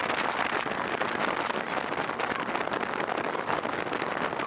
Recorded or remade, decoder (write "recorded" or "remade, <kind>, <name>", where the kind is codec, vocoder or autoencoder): recorded